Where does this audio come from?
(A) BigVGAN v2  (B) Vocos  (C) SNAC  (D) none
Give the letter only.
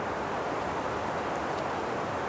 D